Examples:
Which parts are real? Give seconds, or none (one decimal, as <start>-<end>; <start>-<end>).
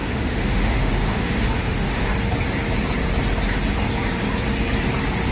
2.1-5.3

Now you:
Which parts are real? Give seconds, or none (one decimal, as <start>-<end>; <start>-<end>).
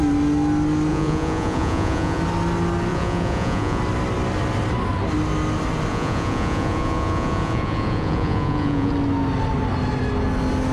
0.0-0.9; 2.2-2.9; 3.8-5.9; 8.9-10.7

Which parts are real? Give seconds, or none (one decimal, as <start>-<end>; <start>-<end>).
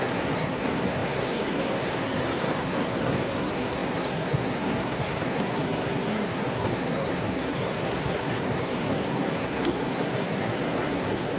none